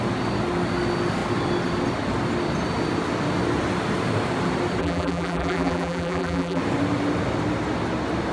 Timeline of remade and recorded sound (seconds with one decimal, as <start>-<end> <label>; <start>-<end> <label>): 0.0-4.8 recorded; 4.8-6.6 remade; 6.6-8.3 recorded